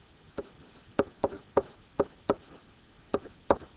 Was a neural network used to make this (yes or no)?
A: no